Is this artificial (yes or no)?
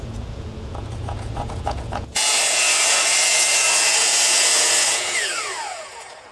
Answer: yes